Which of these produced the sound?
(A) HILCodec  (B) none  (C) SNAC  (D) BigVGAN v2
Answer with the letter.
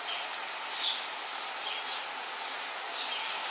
B